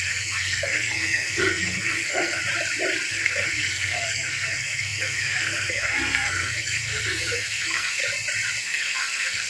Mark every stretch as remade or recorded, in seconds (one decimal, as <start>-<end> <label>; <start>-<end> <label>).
0.0-2.4 remade; 2.4-3.1 recorded; 3.1-8.0 remade; 8.0-8.6 recorded; 8.6-9.5 remade